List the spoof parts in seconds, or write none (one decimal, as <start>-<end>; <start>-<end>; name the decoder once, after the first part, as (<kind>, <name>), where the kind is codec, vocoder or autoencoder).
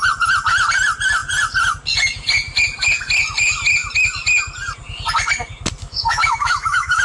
5.8-7.0 (autoencoder, DAC-VAE)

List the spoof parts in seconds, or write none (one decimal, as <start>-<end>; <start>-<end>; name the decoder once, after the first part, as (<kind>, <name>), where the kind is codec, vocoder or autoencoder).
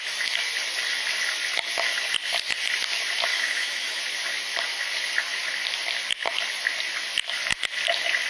3.3-4.0 (autoencoder, DAC-VAE)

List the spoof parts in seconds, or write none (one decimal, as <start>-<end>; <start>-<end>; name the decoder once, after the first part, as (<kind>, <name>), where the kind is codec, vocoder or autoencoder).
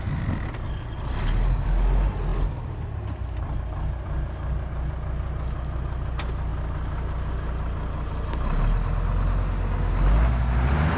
none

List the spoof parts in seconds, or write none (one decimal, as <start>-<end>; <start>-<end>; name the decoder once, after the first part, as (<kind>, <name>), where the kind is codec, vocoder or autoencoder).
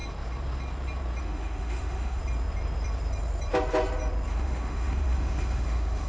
1.2-2.2 (autoencoder, DAC-VAE); 4.3-6.1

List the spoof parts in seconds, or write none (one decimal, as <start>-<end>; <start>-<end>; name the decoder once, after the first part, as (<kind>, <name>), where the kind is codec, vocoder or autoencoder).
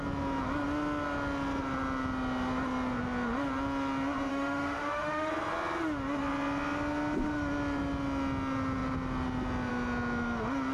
4.3-5.3 (autoencoder, DAC-VAE)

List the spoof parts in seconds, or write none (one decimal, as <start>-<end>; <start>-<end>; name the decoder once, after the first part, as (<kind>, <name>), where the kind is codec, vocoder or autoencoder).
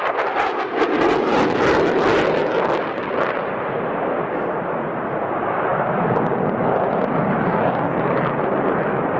none